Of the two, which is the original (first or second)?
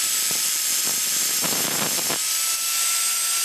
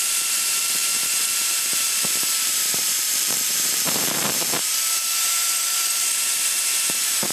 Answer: first